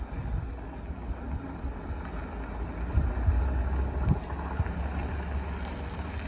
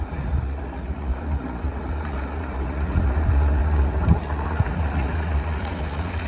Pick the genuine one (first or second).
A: first